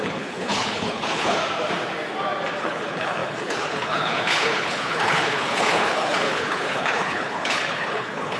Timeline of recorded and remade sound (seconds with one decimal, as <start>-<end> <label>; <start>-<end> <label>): 0.0-1.4 remade; 1.4-2.6 recorded; 2.6-8.4 remade